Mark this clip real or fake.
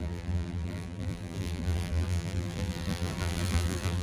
fake